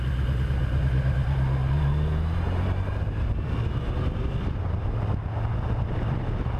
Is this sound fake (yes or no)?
no